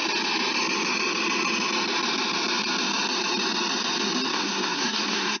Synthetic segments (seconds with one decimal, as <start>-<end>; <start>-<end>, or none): 4.3-5.4